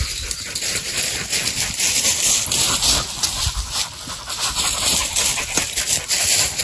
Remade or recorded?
recorded